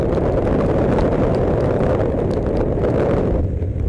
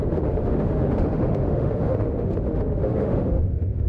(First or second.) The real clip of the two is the first